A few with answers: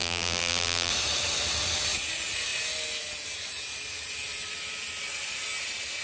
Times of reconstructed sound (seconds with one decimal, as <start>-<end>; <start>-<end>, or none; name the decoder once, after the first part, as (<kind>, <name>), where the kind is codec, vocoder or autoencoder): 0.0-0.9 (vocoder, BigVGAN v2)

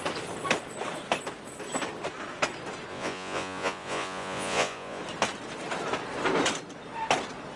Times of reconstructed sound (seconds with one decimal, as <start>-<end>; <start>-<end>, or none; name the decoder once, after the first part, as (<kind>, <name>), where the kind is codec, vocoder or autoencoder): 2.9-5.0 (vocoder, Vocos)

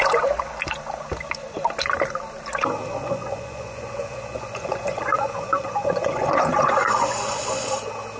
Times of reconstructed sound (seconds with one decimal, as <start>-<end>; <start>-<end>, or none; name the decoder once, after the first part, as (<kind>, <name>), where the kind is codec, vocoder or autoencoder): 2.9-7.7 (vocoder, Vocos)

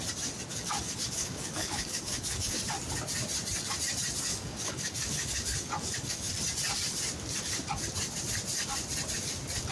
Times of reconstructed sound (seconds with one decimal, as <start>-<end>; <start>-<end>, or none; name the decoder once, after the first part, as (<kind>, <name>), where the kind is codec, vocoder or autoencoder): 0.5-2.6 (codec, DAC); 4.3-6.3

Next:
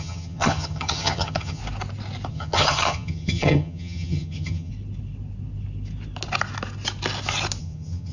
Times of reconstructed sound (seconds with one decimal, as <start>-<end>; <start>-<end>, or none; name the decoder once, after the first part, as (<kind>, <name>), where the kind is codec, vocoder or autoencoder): 0.0-1.6 (vocoder, HiFi-GAN); 2.3-4.7; 7.6-8.1

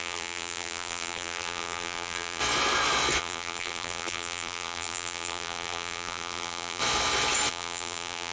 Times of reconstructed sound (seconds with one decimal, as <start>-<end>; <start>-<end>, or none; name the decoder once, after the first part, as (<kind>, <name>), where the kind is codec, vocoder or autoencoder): 0.0-2.4 (vocoder, BigVGAN v2); 3.2-6.8; 7.5-8.3

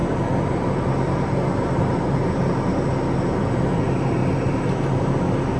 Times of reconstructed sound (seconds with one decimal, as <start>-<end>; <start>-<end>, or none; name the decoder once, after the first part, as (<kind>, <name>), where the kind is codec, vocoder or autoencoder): 4.2-5.1 (vocoder, BigVGAN v2)